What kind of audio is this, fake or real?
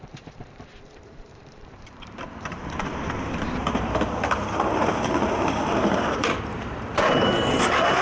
fake